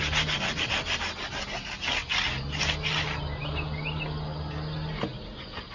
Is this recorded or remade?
recorded